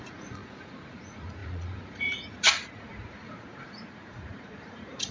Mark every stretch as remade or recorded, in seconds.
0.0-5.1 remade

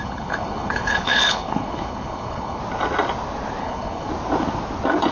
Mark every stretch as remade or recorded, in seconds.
0.0-2.6 remade; 2.6-3.6 recorded; 3.6-4.1 remade; 4.1-5.1 recorded

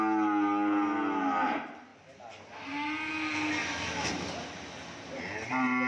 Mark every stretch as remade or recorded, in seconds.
0.0-3.6 recorded; 3.6-4.1 remade; 4.1-5.9 recorded

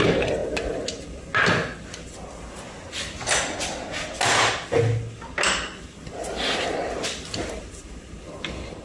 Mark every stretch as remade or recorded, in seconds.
0.0-8.8 recorded

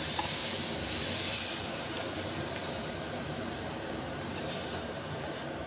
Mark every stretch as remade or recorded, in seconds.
0.0-0.4 remade; 0.4-1.6 recorded; 1.6-5.7 remade

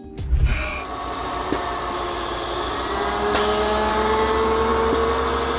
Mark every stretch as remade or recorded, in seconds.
0.0-5.6 recorded

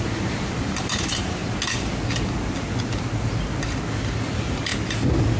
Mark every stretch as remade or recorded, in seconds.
0.0-1.4 remade; 1.4-4.0 recorded; 4.0-4.7 remade; 4.7-5.4 recorded

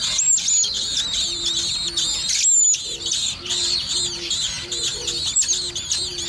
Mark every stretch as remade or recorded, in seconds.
0.0-6.3 recorded